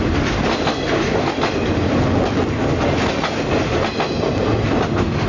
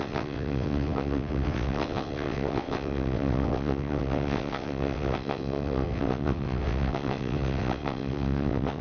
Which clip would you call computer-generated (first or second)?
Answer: second